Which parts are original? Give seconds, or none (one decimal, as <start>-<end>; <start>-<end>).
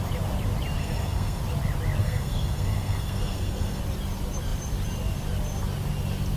0.0-0.8; 1.4-2.0; 3.8-6.4